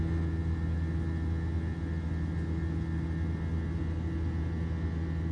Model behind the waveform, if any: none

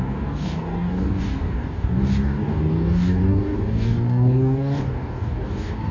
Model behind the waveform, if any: codec, DAC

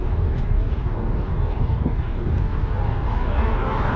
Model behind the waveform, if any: codec, DAC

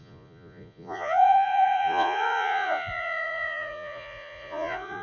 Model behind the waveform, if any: vocoder, Vocos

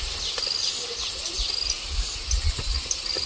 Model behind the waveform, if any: none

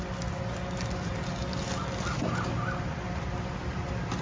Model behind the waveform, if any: none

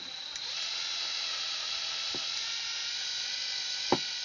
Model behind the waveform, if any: none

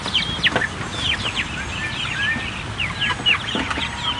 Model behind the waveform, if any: none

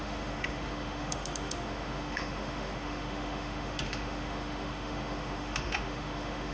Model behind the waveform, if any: autoencoder, DAC-VAE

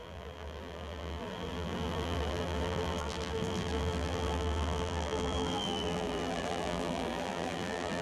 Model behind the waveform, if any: vocoder, BigVGAN v2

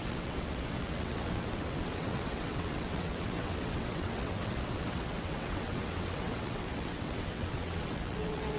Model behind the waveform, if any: vocoder, WaveNeXt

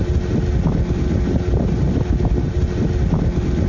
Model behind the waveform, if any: none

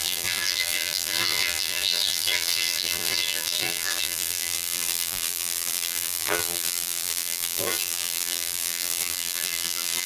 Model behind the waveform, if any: vocoder, BigVGAN v2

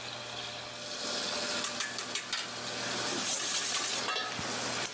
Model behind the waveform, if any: none